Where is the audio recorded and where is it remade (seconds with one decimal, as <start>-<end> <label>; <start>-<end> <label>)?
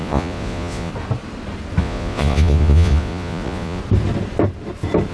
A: 0.0-0.9 remade; 0.9-1.8 recorded; 1.8-3.8 remade; 3.8-5.1 recorded